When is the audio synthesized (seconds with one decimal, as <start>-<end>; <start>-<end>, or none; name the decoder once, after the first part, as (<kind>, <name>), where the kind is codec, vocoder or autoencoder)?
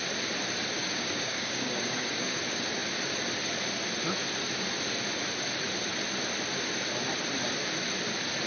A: 0.8-2.4 (codec, DAC)